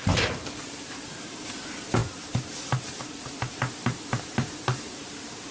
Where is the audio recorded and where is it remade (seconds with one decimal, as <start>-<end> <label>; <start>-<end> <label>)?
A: 0.0-5.5 remade